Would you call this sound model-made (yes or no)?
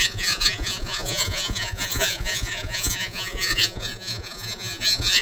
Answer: yes